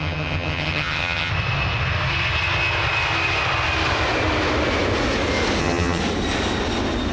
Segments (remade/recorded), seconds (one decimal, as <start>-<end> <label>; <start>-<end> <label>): 0.0-1.3 remade; 1.3-5.6 recorded; 5.6-6.0 remade; 6.0-7.1 recorded